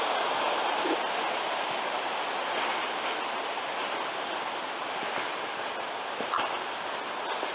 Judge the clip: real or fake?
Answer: real